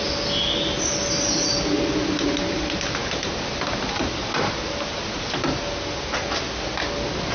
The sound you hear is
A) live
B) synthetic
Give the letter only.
A